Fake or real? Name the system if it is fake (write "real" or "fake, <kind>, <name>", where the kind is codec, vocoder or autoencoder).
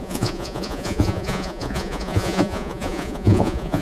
fake, vocoder, Vocos